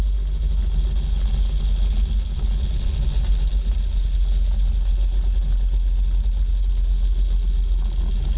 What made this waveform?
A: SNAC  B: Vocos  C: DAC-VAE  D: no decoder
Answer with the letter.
D